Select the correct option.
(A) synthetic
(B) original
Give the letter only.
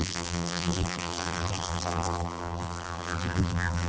A